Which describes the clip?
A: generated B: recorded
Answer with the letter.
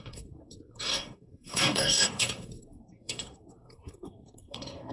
A